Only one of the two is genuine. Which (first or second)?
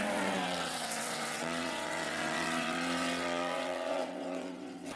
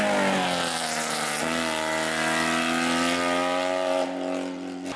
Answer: second